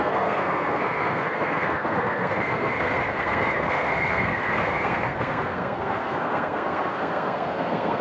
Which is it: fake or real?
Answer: fake